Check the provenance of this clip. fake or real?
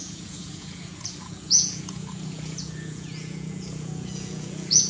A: fake